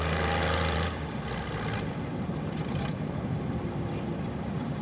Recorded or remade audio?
remade